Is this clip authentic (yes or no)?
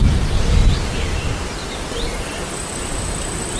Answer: no